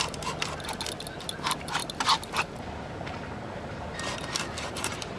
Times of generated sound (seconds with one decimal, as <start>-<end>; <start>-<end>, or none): none